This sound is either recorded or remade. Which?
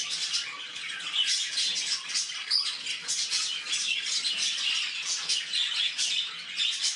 recorded